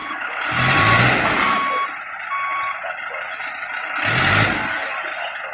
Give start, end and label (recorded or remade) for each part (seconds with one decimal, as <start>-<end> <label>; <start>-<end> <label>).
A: 0.0-5.5 recorded